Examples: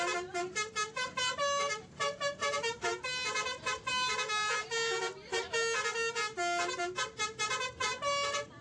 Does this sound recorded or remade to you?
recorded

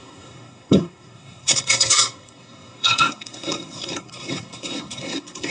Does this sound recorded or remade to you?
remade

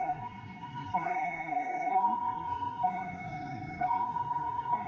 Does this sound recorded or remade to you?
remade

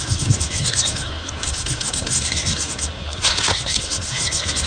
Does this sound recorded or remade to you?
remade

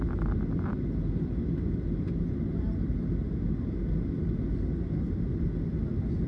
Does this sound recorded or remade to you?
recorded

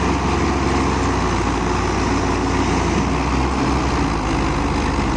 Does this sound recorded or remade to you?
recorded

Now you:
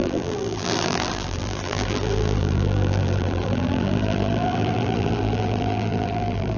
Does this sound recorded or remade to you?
remade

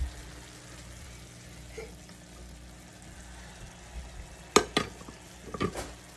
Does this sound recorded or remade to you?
recorded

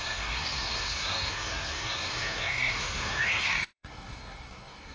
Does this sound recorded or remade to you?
remade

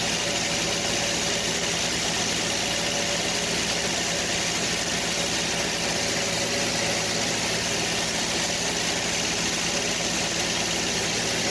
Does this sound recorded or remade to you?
recorded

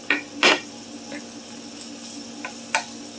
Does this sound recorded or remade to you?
recorded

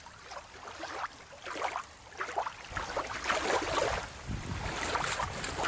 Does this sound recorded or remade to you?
recorded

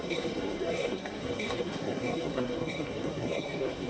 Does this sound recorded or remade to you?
remade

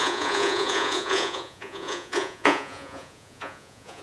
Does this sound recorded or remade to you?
remade